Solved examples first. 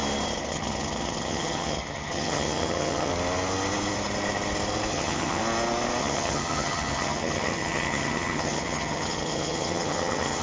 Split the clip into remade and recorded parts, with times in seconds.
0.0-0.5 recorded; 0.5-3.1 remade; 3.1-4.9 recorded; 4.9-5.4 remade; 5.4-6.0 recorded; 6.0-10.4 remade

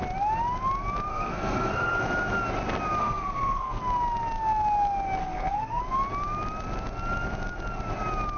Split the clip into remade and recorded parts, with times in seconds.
0.0-1.1 recorded; 1.1-2.0 remade; 2.0-3.0 recorded; 3.0-3.8 remade; 3.8-5.2 recorded; 5.2-5.8 remade; 5.8-8.4 recorded